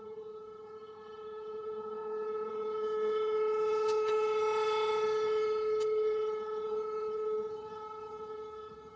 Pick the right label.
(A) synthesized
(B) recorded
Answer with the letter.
A